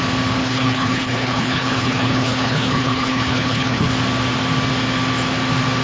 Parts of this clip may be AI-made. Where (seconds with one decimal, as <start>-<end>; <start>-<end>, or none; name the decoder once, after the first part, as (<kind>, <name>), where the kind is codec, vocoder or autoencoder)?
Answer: 0.4-3.9 (codec, HILCodec)